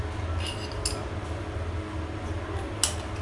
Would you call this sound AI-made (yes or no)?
no